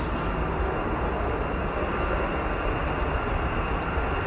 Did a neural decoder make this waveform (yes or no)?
no